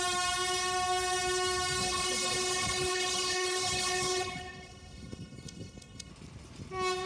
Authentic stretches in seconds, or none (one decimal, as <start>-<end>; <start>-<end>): 0.0-1.8; 6.1-7.1